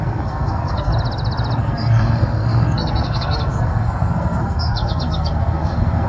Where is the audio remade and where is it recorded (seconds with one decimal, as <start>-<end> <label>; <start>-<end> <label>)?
0.0-0.9 remade; 0.9-1.6 recorded; 1.6-6.1 remade